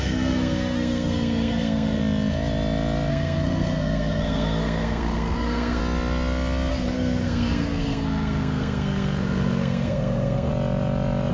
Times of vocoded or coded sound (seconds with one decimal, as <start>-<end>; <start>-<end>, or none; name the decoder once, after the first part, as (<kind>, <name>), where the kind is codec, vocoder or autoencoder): 0.0-2.0 (codec, SNAC); 3.1-5.8; 6.7-10.5